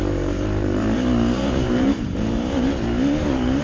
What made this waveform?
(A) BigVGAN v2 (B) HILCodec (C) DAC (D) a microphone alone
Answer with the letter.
A